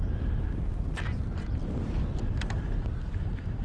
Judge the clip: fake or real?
real